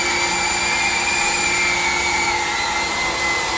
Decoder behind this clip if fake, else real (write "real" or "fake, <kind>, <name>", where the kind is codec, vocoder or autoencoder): real